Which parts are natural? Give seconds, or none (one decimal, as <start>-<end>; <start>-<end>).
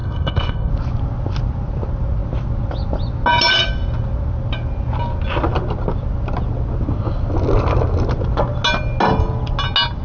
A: 0.7-10.0